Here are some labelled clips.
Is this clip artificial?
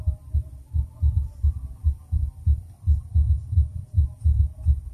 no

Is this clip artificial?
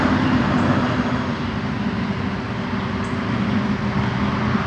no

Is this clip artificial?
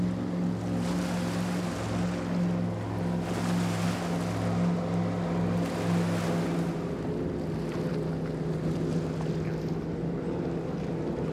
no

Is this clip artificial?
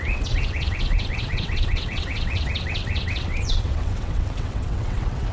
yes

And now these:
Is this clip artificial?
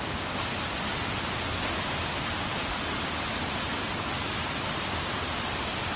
no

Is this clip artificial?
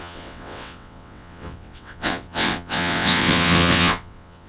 yes